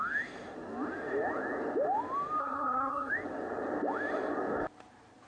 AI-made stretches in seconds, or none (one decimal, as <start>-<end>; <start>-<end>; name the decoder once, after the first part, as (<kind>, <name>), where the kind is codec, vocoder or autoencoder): 2.4-3.1 (codec, SNAC)